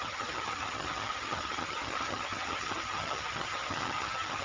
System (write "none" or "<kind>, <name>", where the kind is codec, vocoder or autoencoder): vocoder, HiFi-GAN